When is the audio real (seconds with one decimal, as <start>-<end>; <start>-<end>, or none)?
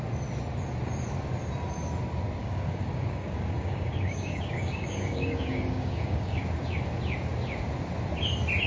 0.0-2.4; 6.4-8.7